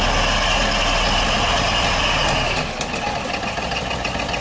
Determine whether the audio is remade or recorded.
recorded